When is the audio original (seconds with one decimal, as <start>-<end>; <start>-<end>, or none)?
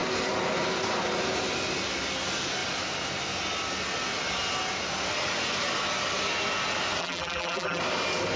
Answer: 0.0-7.0; 7.8-8.4